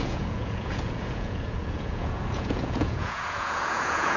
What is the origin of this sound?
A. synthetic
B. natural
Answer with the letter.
A